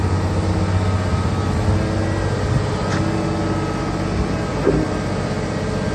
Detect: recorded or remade recorded